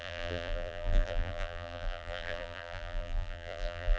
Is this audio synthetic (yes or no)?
yes